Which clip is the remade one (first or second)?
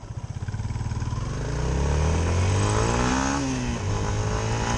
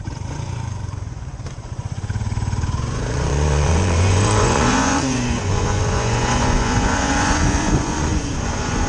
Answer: second